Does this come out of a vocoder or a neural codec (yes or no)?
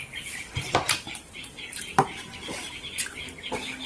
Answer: yes